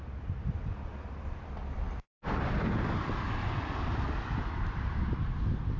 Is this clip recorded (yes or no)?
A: no